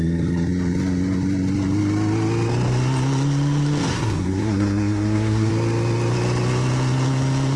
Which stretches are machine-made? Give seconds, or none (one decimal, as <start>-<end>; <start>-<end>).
3.9-5.5